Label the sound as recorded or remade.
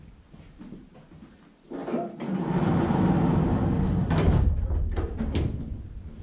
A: recorded